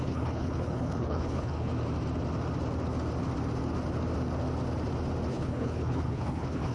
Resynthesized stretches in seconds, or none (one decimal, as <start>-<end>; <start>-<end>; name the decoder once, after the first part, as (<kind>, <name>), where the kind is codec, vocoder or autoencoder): 0.0-1.7 (codec, HILCodec); 5.3-6.7